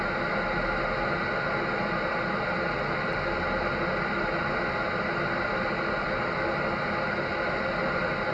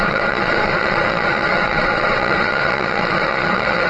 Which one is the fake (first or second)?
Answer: second